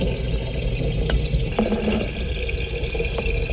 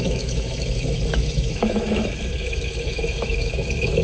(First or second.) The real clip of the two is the first